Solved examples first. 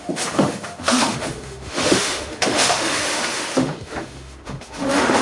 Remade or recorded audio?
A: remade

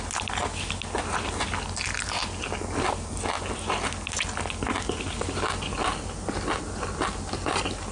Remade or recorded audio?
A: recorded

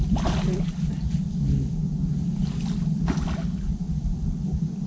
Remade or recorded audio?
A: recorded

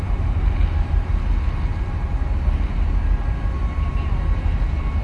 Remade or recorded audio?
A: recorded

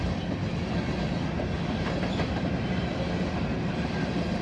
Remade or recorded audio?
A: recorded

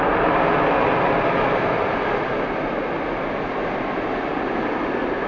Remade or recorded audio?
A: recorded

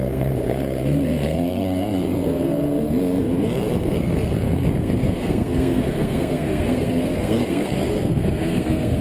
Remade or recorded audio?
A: remade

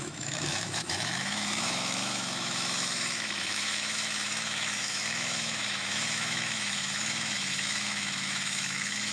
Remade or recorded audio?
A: remade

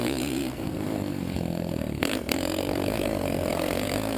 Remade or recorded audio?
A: remade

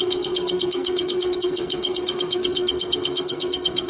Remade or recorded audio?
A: remade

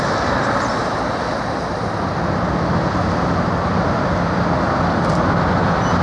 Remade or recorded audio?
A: recorded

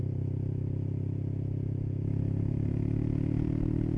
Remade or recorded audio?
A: recorded